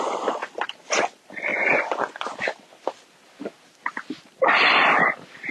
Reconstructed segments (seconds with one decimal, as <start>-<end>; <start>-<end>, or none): 1.5-2.3